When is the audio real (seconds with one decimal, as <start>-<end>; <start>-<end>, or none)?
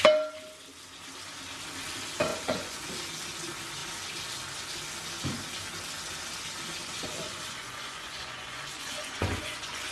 0.0-2.3; 2.9-6.8